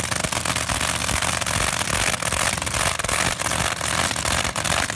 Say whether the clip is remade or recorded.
recorded